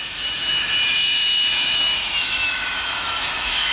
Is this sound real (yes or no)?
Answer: no